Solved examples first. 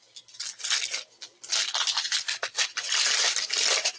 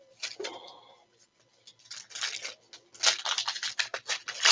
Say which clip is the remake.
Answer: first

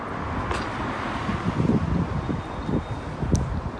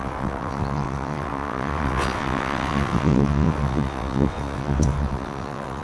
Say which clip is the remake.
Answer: second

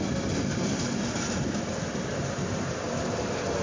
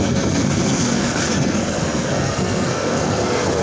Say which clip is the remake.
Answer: second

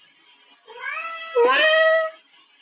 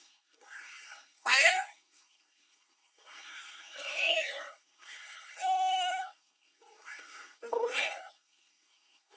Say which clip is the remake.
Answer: second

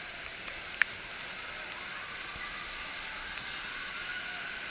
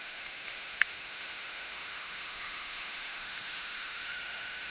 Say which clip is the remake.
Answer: second